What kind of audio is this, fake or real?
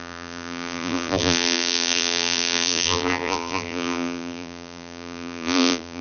fake